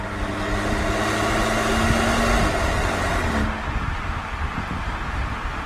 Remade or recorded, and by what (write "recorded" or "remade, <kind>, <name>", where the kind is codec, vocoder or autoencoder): recorded